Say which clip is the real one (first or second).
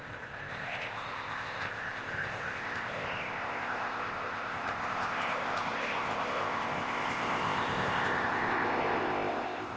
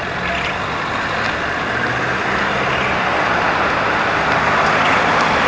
second